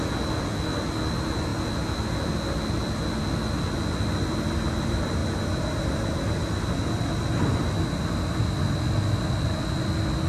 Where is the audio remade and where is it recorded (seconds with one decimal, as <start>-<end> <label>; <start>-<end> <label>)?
0.0-10.3 recorded